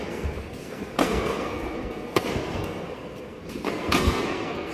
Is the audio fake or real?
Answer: fake